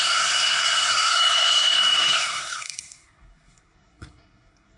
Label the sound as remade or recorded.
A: remade